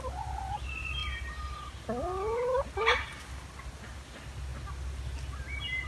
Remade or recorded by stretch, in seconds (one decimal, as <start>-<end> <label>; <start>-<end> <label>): 0.0-5.9 recorded